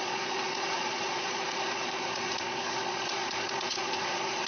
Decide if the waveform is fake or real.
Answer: fake